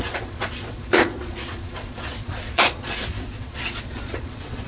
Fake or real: fake